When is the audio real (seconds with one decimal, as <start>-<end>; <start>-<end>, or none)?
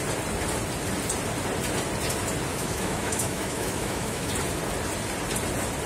0.0-2.5; 4.3-5.9